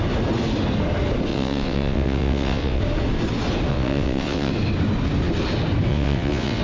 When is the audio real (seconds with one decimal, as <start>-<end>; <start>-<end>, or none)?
0.0-1.3; 2.8-3.7; 4.5-5.9